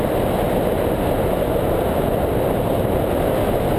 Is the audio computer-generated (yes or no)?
no